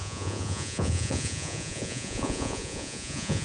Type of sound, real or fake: fake